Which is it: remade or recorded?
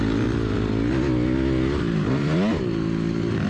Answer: recorded